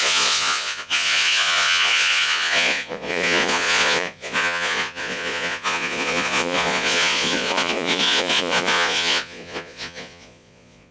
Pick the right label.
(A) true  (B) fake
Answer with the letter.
B